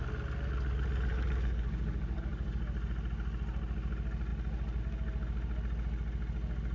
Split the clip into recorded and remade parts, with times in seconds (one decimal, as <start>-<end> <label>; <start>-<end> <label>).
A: 0.0-1.1 recorded; 1.1-2.6 remade; 2.6-6.7 recorded